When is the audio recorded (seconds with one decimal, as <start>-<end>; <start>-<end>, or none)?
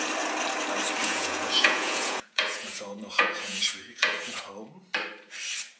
0.0-1.0; 4.5-5.8